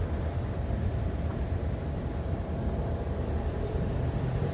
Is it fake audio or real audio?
fake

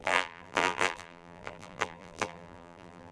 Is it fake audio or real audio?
fake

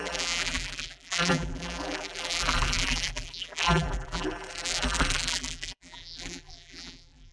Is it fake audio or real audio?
fake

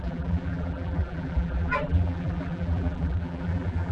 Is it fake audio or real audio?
fake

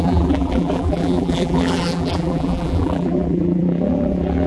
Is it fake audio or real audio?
fake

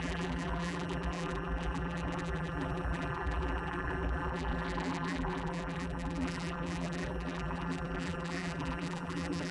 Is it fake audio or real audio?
fake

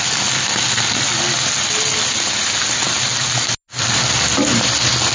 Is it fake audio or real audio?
real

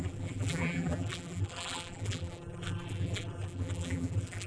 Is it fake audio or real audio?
fake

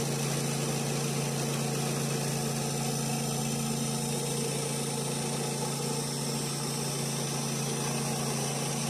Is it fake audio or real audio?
real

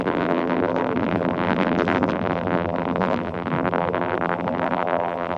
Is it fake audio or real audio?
fake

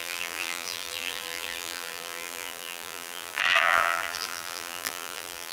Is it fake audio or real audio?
fake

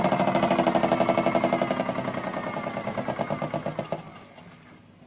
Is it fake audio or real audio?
real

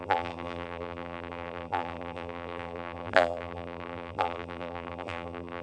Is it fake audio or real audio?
fake